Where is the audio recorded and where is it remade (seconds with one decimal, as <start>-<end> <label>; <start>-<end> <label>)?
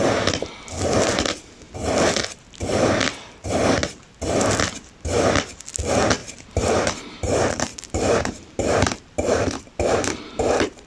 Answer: 0.0-6.2 recorded; 6.2-6.9 remade; 6.9-7.7 recorded; 7.7-10.9 remade